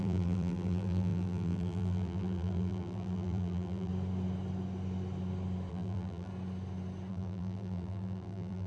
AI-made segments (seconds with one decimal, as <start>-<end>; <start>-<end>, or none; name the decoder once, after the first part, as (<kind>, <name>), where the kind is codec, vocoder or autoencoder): 0.0-3.9 (vocoder, BigVGAN v2); 5.7-6.3; 7.1-8.7